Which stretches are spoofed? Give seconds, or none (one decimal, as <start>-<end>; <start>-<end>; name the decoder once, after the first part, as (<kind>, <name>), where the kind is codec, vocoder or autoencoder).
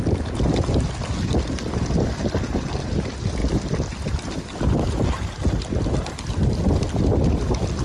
none